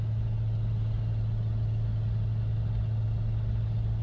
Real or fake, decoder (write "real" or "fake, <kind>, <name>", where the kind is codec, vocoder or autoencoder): real